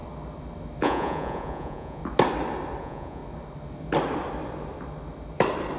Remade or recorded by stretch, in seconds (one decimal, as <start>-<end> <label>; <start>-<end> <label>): 0.0-0.8 recorded; 0.8-2.0 remade; 2.0-2.8 recorded; 2.8-3.2 remade; 3.2-5.8 recorded